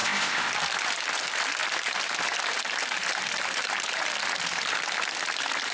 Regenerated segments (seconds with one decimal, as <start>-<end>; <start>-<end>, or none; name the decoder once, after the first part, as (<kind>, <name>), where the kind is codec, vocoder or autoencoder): 0.0-0.5 (codec, ZipCodec)